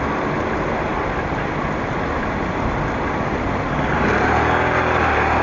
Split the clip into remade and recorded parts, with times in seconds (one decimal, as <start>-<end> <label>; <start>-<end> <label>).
0.0-5.4 recorded